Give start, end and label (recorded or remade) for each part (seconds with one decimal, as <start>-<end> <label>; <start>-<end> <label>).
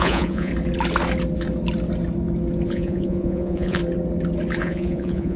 0.0-0.5 remade; 0.5-2.7 recorded; 2.7-3.8 remade; 3.8-4.6 recorded; 4.6-5.4 remade